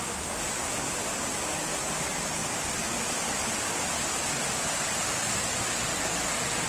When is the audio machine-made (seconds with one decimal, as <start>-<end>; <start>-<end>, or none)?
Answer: none